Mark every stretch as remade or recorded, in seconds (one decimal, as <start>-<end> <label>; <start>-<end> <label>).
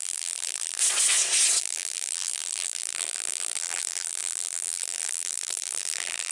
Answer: 0.0-0.8 remade; 0.8-1.6 recorded; 1.6-6.3 remade